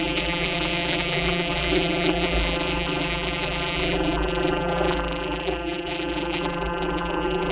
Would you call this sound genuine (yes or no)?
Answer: no